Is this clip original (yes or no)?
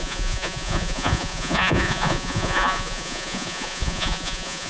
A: no